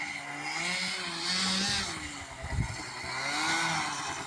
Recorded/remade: recorded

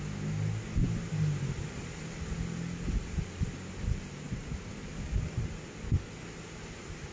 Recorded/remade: recorded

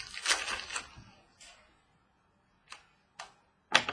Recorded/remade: recorded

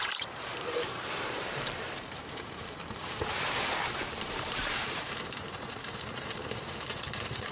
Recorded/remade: remade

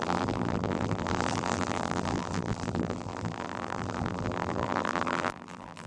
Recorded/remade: remade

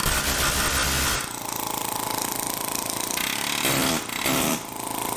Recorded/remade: recorded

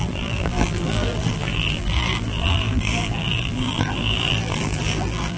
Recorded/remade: remade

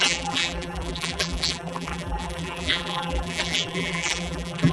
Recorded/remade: remade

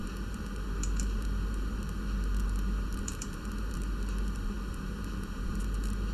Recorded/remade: remade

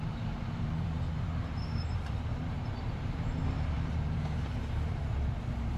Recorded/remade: remade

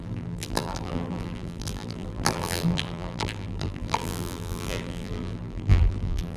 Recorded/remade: remade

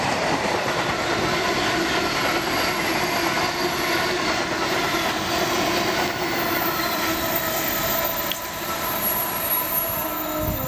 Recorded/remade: recorded